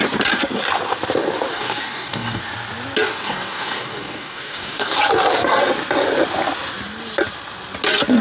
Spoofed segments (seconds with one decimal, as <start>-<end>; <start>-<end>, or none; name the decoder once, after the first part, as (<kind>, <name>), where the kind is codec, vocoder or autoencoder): 1.5-2.4 (codec, DAC); 3.1-5.0